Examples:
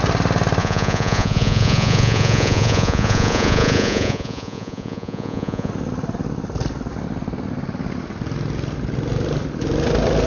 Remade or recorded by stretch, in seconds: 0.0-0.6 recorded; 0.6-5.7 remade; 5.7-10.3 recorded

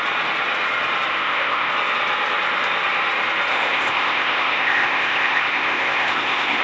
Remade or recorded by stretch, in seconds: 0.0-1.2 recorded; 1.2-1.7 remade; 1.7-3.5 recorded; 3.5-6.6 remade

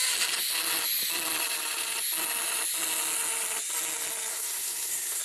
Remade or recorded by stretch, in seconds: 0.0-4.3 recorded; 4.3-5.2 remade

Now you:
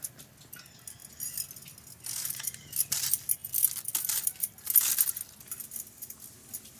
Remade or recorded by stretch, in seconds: 0.0-6.8 recorded

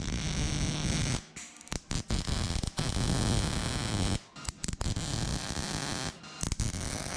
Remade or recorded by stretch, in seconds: 0.0-7.2 recorded

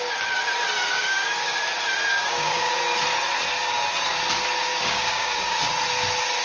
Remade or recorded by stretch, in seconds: 0.0-0.9 recorded; 0.9-1.6 remade; 1.6-2.1 recorded; 2.1-2.7 remade; 2.7-4.7 recorded; 4.7-5.6 remade; 5.6-6.4 recorded